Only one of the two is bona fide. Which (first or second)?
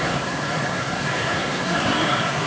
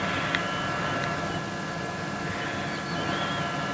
second